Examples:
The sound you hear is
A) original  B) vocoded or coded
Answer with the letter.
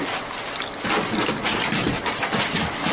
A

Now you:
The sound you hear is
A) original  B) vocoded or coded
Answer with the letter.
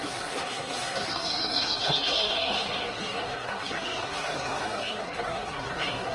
B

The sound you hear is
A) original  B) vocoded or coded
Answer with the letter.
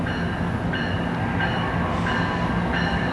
A